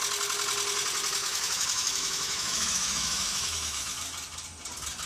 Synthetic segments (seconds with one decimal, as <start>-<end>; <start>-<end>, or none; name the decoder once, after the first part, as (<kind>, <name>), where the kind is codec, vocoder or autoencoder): 1.2-3.9 (autoencoder, DAC-VAE)